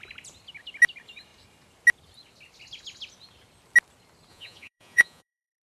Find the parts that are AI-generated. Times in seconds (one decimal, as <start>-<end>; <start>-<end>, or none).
4.3-5.7